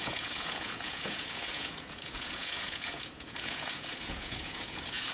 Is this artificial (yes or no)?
yes